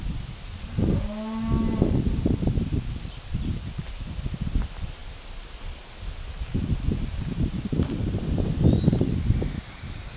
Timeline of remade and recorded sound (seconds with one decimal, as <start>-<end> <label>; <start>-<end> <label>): 0.0-10.2 recorded